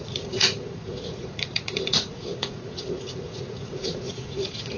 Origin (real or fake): fake